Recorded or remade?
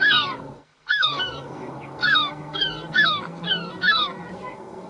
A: remade